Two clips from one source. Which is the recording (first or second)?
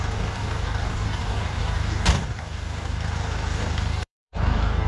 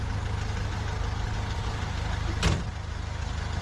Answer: second